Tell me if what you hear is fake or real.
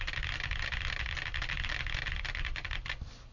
real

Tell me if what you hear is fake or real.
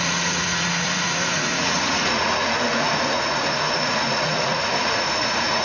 fake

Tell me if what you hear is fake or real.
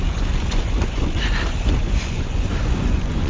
fake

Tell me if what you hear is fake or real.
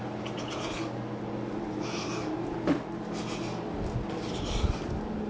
real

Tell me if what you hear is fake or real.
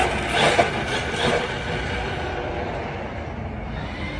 real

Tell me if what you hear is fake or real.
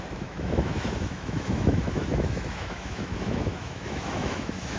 fake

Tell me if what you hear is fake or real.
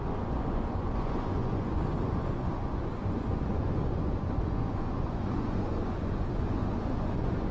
fake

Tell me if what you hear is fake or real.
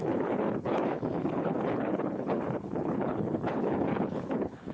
fake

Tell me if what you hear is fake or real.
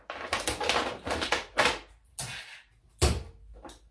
real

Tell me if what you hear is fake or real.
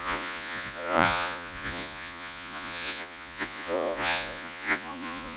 fake